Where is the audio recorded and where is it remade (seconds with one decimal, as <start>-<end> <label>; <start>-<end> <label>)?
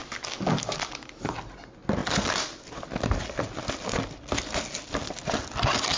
0.0-6.0 recorded